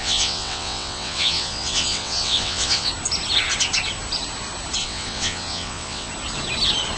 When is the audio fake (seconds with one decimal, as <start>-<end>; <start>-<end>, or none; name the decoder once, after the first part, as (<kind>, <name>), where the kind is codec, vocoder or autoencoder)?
0.0-2.9 (vocoder, WaveNeXt); 4.8-6.1